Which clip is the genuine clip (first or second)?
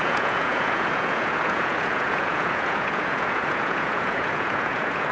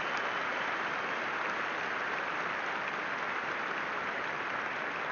second